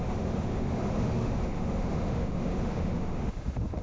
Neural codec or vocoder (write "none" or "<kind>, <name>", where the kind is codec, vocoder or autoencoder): autoencoder, DAC-VAE